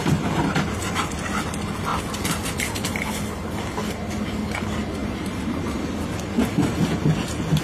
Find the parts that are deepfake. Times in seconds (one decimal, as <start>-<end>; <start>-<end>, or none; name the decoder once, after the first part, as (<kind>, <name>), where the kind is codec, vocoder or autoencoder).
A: 5.0-5.8 (vocoder, BigVGAN v2)